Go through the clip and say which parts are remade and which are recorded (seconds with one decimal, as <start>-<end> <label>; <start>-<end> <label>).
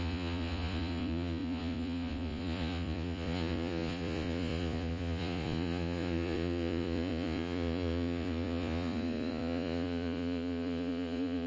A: 0.0-11.5 remade